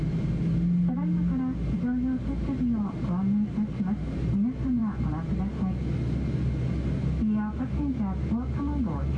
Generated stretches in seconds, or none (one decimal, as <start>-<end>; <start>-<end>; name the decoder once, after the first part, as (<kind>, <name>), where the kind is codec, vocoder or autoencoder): none